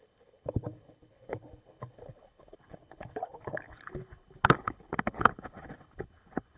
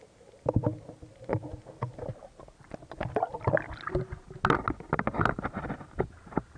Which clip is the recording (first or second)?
second